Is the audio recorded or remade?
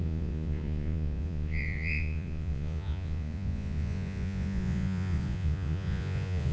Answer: remade